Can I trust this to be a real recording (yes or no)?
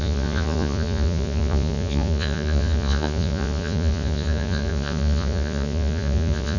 no